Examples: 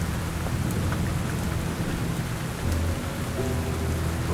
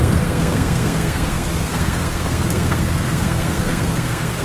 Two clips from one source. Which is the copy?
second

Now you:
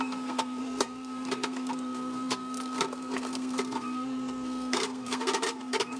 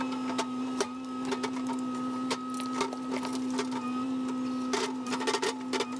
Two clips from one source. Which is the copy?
first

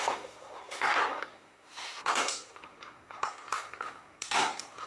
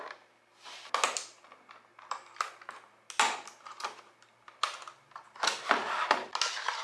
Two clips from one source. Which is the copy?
first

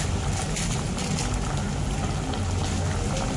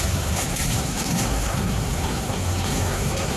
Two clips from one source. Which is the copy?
second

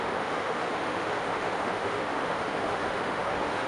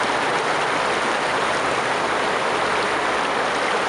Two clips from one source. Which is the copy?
first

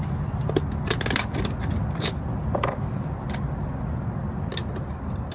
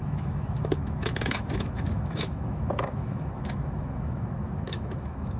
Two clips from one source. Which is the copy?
second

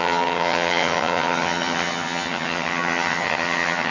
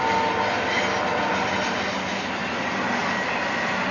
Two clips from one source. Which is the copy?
first